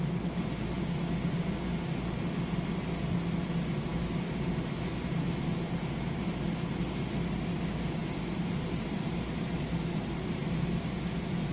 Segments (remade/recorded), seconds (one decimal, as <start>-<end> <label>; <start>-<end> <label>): 0.0-3.9 recorded; 3.9-5.4 remade; 5.4-8.0 recorded; 8.0-11.0 remade; 11.0-11.5 recorded